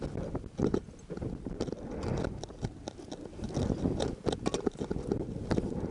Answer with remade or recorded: recorded